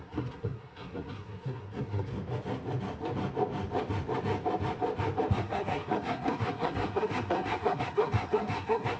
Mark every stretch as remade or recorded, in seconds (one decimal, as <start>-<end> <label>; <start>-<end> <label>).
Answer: 0.0-2.1 remade; 2.1-5.3 recorded; 5.3-9.0 remade